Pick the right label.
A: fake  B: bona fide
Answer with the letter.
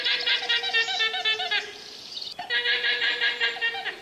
B